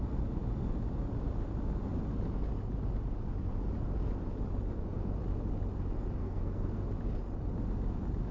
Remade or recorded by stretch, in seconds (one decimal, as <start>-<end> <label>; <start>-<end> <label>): 0.0-6.2 recorded; 6.2-6.8 remade; 6.8-8.3 recorded